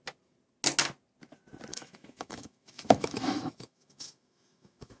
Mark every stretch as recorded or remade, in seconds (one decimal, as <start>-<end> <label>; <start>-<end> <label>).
0.0-1.7 recorded; 1.7-5.0 remade